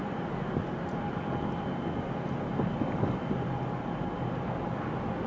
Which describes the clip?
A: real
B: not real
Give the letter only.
A